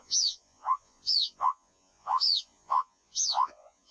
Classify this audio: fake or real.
fake